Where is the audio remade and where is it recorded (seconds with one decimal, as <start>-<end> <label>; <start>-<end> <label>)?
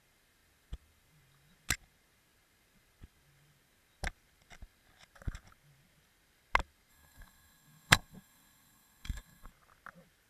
0.0-6.9 recorded; 6.9-9.5 remade; 9.5-10.3 recorded